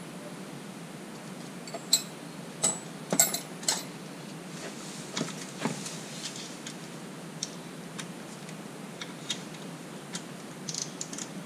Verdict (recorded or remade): recorded